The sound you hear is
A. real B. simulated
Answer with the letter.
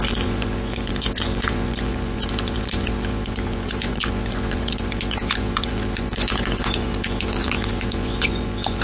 B